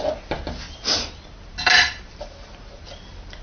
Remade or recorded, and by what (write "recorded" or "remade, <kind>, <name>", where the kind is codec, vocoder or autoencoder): recorded